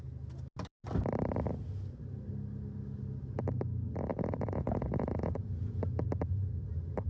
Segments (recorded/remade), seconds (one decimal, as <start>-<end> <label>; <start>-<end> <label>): 0.0-4.1 recorded; 4.1-5.8 remade; 5.8-7.1 recorded